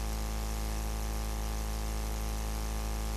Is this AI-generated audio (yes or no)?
no